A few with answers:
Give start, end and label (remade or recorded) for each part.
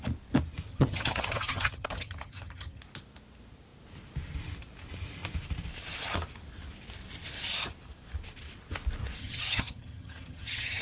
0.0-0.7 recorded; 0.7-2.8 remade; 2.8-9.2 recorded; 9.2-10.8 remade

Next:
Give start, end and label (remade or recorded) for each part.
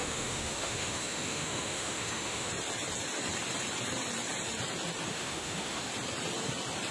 0.0-2.5 remade; 2.5-5.1 recorded; 5.1-5.9 remade; 5.9-6.9 recorded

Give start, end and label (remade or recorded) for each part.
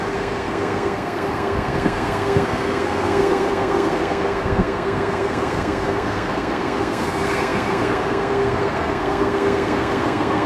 0.0-10.5 remade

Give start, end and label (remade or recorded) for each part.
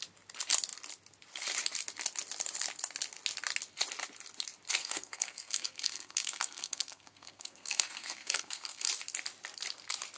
0.0-4.8 recorded; 4.8-8.9 remade; 8.9-10.2 recorded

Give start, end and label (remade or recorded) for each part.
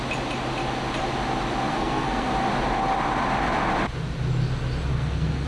0.0-1.7 recorded; 1.7-2.3 remade; 2.3-4.9 recorded; 4.9-5.5 remade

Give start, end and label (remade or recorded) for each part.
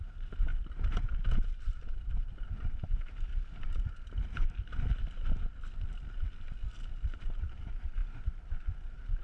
0.0-0.5 remade; 0.5-1.6 recorded; 1.6-3.3 remade; 3.3-7.2 recorded; 7.2-9.2 remade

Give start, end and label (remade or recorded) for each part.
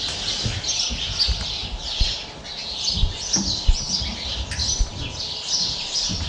0.0-6.3 recorded